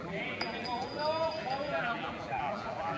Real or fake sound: fake